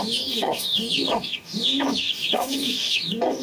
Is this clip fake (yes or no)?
yes